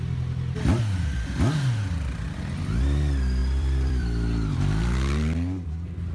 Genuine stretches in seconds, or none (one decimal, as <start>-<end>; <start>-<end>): 0.0-1.8; 2.6-3.4; 4.6-6.1